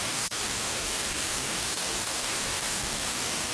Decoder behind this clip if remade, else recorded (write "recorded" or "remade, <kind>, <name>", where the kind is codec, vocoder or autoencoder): remade, codec, DAC